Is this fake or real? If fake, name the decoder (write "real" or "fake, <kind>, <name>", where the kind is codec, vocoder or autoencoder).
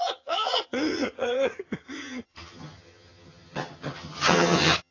fake, vocoder, HiFi-GAN